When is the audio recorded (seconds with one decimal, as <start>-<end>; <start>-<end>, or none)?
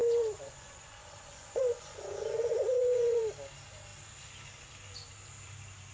3.2-5.9